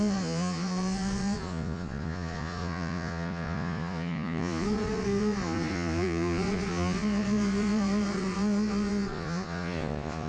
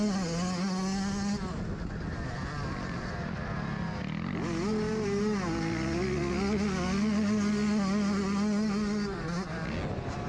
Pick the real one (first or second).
second